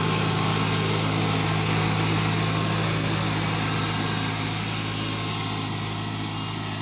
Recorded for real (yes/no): yes